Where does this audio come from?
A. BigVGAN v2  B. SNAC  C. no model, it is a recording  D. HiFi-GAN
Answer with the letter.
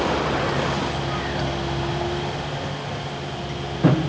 C